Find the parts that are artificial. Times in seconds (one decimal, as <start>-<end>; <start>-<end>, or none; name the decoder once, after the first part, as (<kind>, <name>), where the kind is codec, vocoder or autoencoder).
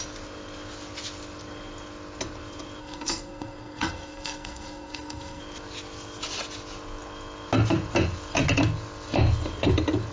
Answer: 2.8-5.4 (codec, SNAC)